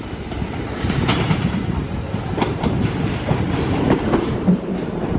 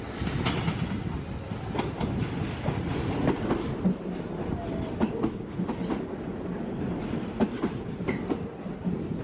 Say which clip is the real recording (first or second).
second